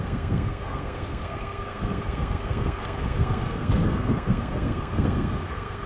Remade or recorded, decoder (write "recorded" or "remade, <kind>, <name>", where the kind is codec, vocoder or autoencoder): remade, codec, SNAC